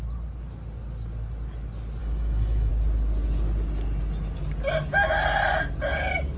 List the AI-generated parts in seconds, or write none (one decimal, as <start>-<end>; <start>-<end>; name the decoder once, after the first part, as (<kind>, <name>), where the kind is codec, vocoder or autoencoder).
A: 2.0-2.7 (autoencoder, DAC-VAE)